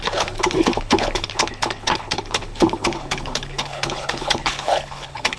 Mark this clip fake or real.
fake